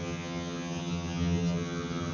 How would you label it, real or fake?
fake